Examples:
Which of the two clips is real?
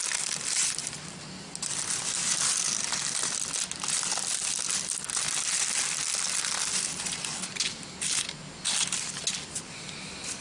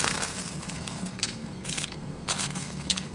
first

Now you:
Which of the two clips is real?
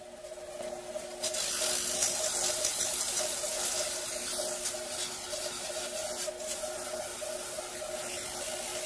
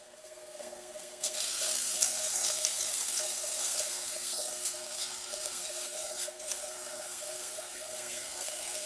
first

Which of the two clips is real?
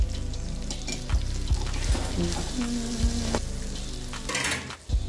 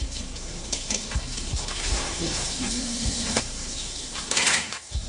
first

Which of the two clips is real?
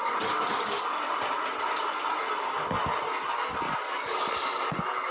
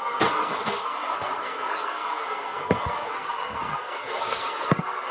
first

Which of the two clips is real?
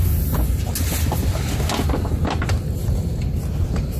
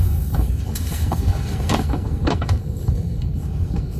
first